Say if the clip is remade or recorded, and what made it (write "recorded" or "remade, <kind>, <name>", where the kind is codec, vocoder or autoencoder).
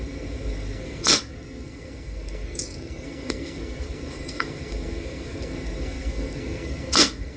remade, codec, SNAC